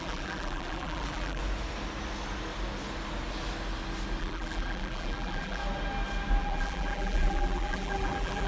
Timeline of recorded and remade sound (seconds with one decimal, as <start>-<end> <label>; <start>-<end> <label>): 0.0-1.4 remade; 1.4-4.2 recorded; 4.2-5.6 remade; 5.6-6.4 recorded; 6.4-8.5 remade